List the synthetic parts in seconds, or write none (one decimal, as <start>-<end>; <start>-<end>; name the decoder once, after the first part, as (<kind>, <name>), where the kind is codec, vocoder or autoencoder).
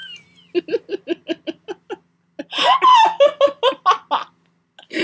none